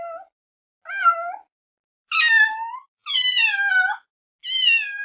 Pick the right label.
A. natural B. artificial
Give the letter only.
A